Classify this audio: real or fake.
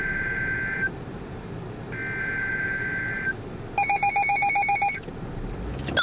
real